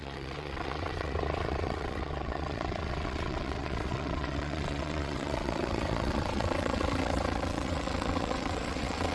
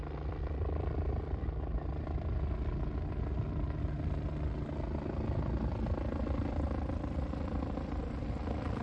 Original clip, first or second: second